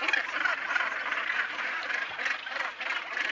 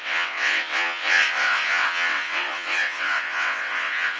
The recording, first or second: first